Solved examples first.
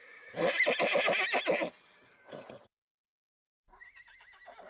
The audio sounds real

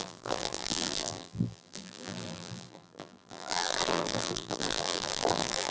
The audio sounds fake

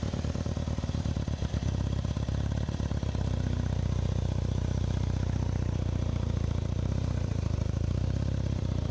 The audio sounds fake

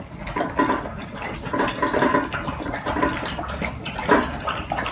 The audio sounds real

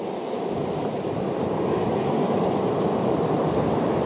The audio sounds fake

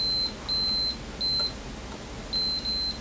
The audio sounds real